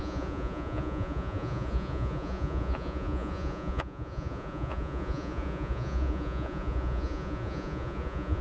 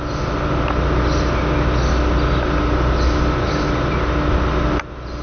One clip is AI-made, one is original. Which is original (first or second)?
second